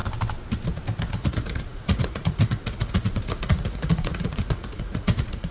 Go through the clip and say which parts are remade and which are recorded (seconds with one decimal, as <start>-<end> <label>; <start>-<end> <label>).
0.0-1.1 recorded; 1.1-5.5 remade